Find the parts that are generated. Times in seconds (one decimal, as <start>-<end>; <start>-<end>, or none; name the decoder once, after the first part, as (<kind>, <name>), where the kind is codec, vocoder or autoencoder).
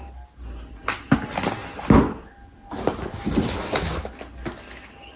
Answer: none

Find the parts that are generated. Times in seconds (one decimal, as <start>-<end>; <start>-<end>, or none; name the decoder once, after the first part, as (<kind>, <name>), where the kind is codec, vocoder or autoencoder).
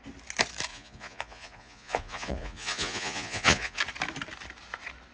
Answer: 0.7-3.8 (vocoder, Vocos)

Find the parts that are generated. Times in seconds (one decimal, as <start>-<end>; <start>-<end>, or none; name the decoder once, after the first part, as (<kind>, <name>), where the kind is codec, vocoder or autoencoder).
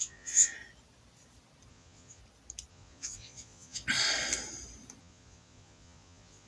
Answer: 0.0-0.5 (vocoder, Vocos); 1.7-2.2; 2.7-3.8; 5.0-6.5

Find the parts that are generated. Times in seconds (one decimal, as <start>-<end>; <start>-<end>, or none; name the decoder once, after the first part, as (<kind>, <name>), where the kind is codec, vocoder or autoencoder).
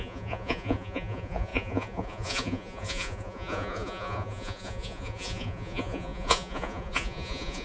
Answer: 0.0-7.6 (vocoder, Vocos)